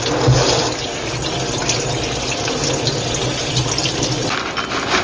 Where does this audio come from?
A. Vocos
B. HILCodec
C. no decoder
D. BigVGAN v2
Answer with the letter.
C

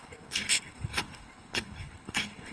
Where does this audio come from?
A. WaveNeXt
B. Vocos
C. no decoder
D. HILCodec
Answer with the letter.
D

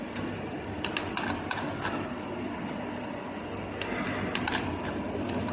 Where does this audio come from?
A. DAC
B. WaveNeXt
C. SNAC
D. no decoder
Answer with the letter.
D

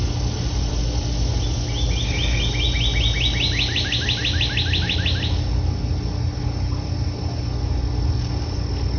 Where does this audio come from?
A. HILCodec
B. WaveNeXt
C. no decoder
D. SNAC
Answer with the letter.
C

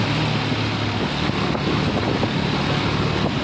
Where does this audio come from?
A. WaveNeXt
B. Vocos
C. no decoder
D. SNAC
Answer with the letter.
C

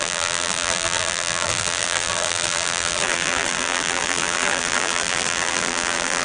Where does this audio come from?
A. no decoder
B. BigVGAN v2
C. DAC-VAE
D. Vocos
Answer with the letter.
B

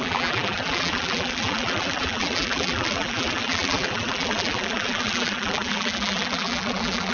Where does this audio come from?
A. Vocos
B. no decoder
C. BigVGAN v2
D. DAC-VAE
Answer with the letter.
C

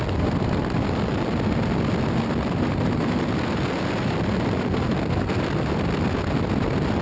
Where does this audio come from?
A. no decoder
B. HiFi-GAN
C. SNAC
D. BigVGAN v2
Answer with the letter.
D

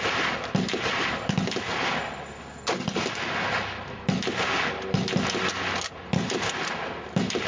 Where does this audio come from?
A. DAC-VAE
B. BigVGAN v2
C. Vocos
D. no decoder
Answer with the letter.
D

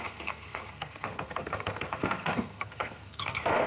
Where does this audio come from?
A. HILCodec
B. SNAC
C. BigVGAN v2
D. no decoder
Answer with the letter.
B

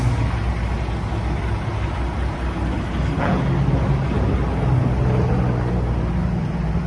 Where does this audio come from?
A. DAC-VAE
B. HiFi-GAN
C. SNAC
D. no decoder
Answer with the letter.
D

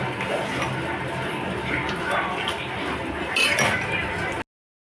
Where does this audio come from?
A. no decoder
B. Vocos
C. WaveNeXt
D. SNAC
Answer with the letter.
A